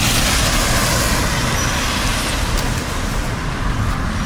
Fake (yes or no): no